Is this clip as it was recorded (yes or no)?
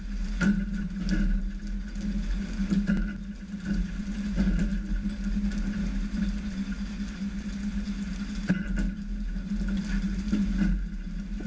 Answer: yes